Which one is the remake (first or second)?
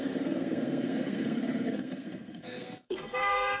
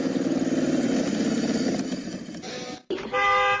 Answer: first